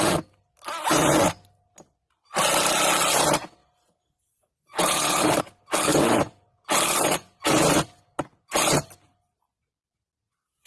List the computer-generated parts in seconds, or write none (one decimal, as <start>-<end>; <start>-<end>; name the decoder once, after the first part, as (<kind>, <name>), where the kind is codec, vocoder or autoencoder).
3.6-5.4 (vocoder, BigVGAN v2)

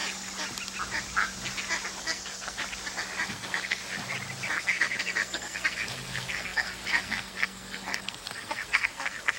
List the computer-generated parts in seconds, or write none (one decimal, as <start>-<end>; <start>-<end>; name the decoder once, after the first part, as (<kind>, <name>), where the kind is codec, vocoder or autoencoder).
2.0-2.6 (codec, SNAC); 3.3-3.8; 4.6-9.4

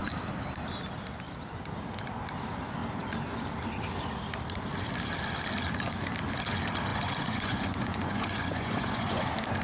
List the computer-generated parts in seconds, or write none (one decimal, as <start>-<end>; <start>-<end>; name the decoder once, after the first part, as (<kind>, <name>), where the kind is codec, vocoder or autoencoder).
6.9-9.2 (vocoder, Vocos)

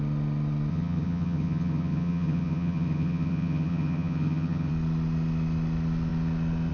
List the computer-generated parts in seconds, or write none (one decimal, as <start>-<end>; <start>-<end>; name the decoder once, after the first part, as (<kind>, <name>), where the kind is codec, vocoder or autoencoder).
0.7-4.7 (vocoder, HiFi-GAN)